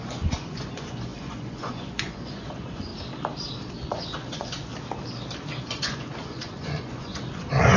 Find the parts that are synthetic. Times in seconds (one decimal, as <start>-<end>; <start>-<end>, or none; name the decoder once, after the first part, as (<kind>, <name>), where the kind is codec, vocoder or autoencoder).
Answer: 0.0-2.9 (vocoder, Vocos); 3.7-4.7; 5.6-7.8

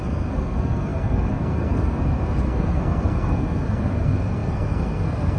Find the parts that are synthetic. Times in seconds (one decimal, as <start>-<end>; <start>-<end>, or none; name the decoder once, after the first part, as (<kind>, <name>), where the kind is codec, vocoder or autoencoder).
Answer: 0.0-5.4 (codec, SNAC)

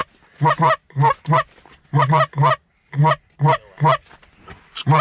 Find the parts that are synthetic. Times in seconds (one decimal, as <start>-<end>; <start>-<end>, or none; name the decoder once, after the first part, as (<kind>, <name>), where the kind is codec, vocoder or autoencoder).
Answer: none

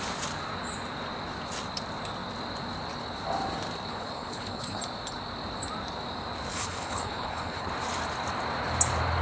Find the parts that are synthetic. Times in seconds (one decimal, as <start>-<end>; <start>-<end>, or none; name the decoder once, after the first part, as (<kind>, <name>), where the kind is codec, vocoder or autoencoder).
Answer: 3.9-4.8 (codec, HILCodec); 6.5-7.7